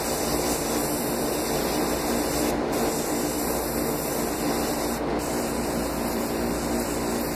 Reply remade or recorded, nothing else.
remade